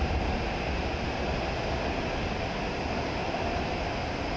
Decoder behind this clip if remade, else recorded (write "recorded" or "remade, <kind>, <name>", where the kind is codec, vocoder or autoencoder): recorded